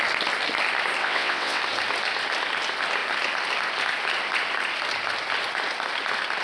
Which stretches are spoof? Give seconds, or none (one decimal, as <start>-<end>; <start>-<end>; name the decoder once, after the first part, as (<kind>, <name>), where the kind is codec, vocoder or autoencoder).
1.0-1.6 (vocoder, WaveNeXt)